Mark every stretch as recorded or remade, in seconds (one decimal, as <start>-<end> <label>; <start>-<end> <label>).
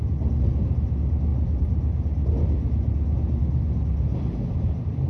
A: 0.0-5.1 recorded